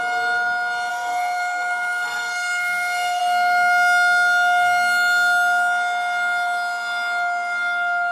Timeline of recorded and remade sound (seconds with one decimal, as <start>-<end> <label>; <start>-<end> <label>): 0.0-0.9 recorded; 0.9-3.2 remade; 3.2-8.1 recorded